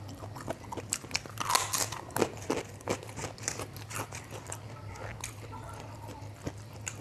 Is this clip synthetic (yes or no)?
no